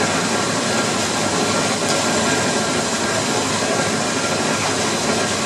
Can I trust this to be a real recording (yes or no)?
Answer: yes